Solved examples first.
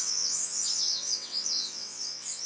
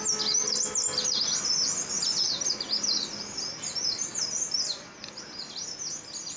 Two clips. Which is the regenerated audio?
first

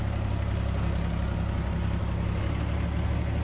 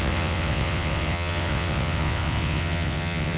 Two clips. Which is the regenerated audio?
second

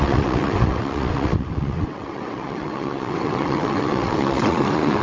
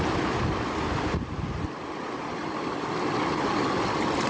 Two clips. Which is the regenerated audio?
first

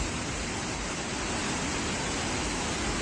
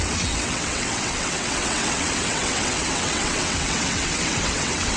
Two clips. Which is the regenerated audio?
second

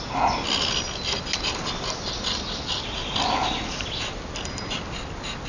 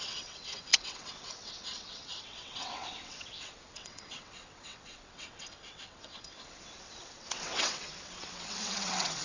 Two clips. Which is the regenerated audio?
second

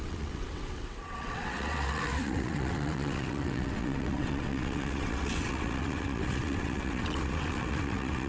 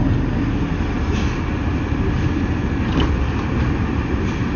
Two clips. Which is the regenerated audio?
first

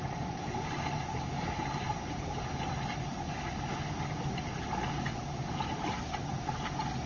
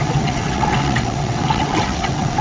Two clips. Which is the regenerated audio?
second